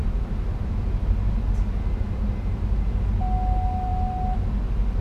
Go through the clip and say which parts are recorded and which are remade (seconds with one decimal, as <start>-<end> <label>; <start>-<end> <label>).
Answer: 0.0-5.0 recorded